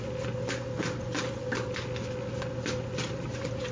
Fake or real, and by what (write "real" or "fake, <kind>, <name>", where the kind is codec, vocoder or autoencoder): real